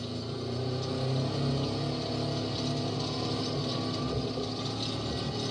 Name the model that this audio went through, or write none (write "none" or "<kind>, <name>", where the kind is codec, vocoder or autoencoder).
none